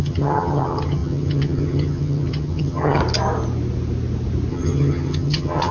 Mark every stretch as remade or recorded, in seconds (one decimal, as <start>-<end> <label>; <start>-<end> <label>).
0.0-3.0 remade; 3.0-4.5 recorded; 4.5-5.7 remade